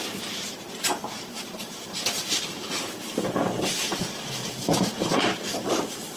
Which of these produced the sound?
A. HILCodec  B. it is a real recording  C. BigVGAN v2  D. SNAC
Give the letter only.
C